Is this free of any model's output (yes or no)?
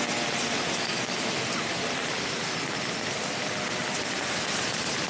yes